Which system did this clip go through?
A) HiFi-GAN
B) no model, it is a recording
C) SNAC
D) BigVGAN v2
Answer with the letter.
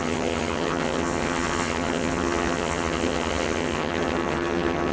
A